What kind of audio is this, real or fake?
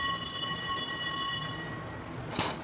real